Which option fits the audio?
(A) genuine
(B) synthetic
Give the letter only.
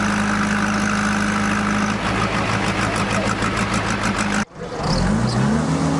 A